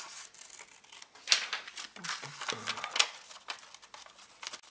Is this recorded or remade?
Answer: recorded